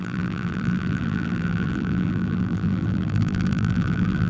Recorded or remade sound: remade